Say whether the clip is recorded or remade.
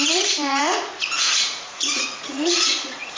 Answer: remade